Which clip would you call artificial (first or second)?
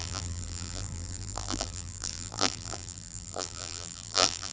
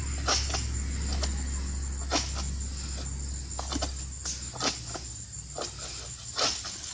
first